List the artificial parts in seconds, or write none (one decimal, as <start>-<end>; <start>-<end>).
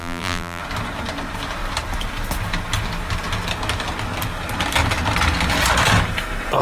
0.0-0.6